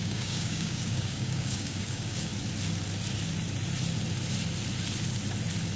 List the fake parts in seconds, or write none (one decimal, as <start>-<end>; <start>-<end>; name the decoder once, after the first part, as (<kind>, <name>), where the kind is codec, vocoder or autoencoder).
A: 0.0-2.3 (codec, DAC)